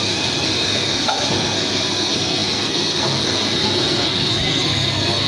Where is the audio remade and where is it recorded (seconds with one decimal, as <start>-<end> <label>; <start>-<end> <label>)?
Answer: 0.0-5.3 remade